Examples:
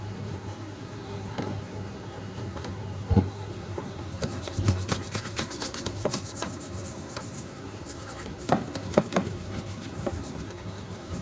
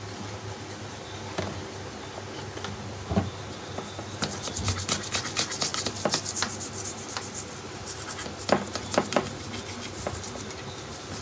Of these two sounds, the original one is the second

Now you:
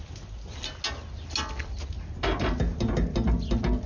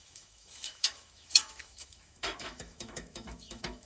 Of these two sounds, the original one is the first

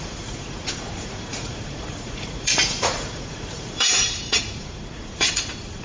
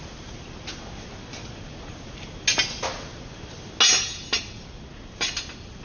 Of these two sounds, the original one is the second